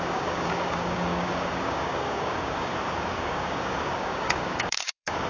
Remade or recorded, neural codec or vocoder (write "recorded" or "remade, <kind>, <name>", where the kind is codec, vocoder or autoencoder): remade, codec, DAC